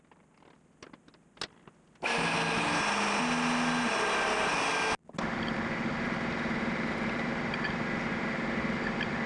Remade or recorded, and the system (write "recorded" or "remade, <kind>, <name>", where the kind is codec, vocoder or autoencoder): recorded